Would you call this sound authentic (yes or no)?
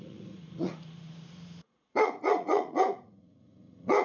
no